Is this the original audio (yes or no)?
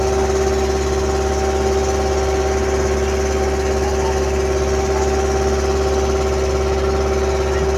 yes